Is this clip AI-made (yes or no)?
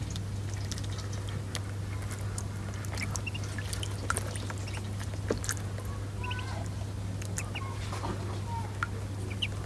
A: no